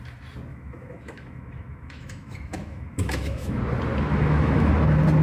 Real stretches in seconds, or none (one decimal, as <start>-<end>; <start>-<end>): 0.0-0.5; 3.6-4.1; 4.7-5.2